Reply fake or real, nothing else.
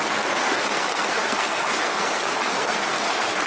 fake